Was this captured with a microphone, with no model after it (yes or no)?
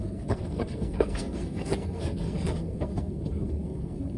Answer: no